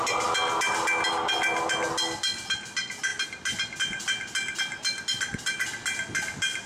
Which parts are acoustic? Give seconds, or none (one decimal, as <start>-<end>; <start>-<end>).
0.0-6.7